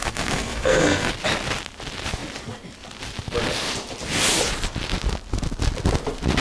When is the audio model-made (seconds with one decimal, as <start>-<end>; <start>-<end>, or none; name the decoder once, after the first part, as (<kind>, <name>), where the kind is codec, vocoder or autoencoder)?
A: 0.0-1.1 (codec, SNAC)